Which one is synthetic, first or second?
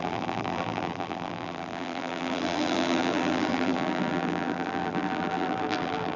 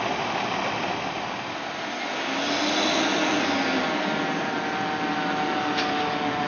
first